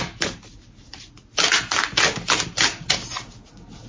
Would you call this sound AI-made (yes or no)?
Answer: no